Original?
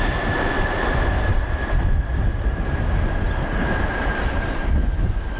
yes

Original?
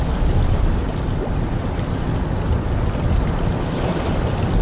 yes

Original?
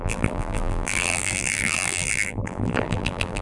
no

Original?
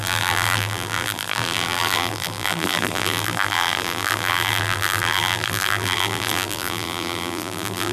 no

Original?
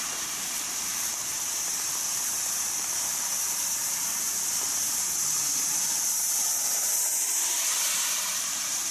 no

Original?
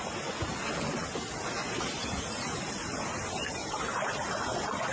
yes